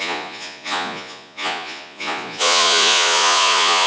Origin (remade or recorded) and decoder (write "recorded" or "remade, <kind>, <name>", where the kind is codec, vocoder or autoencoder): remade, vocoder, Vocos